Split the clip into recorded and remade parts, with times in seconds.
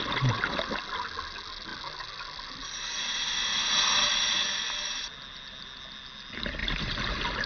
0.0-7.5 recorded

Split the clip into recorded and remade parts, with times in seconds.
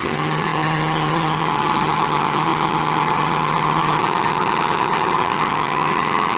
0.0-6.4 remade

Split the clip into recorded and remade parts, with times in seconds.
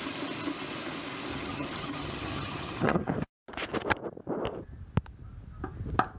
0.0-1.3 recorded; 1.3-3.1 remade; 3.1-6.2 recorded